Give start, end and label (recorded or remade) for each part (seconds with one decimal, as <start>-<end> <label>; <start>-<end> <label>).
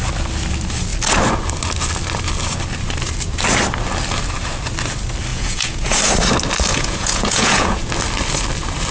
0.0-5.3 recorded; 5.3-6.0 remade; 6.0-6.7 recorded; 6.7-7.9 remade; 7.9-8.9 recorded